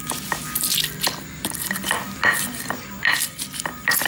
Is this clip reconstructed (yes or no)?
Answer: no